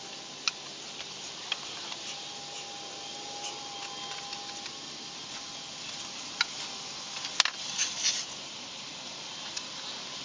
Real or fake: real